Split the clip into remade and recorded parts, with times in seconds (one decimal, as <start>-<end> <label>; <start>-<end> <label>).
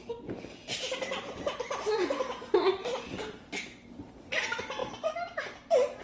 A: 0.0-4.8 recorded; 4.8-6.0 remade